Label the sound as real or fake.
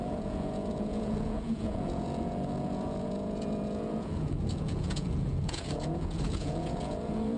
fake